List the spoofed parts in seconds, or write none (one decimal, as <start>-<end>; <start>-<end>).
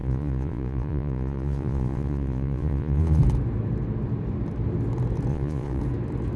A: 0.0-3.2; 5.3-5.8